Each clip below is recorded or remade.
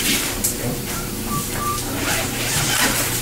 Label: remade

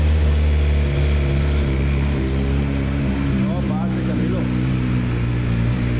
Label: recorded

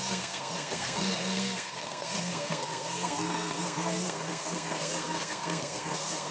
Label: remade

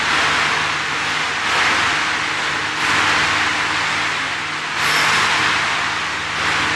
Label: recorded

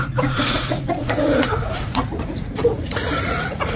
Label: remade